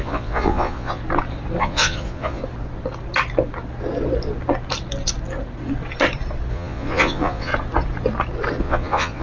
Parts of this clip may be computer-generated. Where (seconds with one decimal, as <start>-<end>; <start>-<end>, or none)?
0.0-1.0; 1.6-2.4; 6.5-7.5; 8.6-9.2